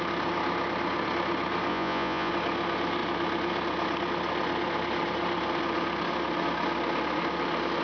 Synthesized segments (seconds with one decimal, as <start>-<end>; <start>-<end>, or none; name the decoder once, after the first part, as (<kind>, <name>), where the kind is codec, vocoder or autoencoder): 1.7-2.3 (vocoder, Vocos)